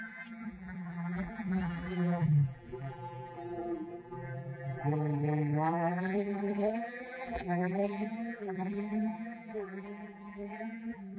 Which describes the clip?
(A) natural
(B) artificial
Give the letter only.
B